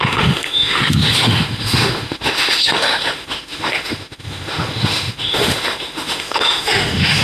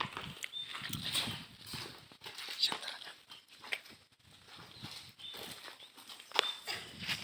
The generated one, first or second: first